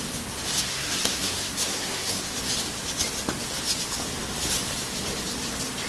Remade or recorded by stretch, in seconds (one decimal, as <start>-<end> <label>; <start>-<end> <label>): 0.0-0.7 recorded; 0.7-2.2 remade; 2.2-5.9 recorded

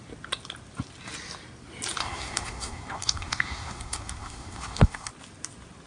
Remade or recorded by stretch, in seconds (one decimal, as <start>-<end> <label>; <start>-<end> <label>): 0.0-2.0 recorded; 2.0-5.1 remade; 5.1-5.9 recorded

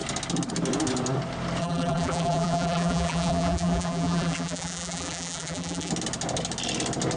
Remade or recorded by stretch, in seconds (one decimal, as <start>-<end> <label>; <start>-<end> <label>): 0.0-1.6 recorded; 1.6-5.9 remade; 5.9-7.2 recorded